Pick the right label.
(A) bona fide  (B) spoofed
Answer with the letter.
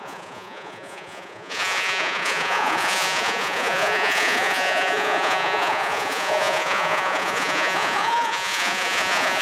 B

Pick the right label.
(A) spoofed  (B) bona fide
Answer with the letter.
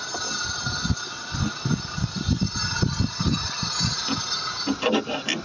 B